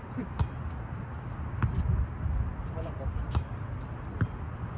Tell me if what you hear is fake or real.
real